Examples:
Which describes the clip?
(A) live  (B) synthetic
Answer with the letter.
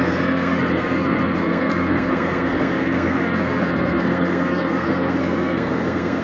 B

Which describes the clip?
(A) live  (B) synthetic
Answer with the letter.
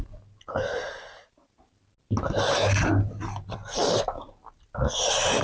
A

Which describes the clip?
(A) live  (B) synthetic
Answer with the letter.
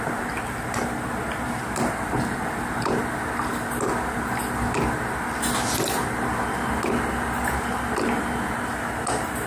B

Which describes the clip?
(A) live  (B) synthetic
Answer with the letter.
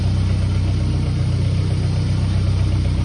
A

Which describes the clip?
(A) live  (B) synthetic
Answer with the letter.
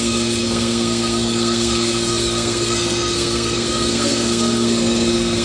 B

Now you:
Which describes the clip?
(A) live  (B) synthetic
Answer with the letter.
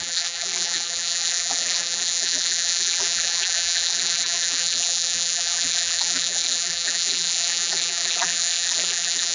B